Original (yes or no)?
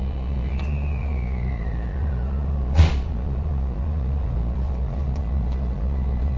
no